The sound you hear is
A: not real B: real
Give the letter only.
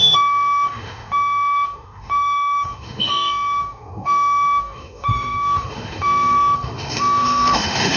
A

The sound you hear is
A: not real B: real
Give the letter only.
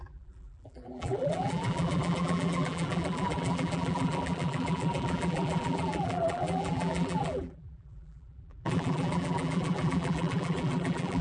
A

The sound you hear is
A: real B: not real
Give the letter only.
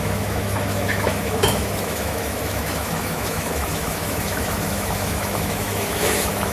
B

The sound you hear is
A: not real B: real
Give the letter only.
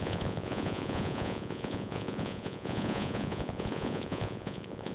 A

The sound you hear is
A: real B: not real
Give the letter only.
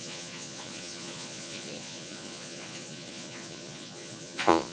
B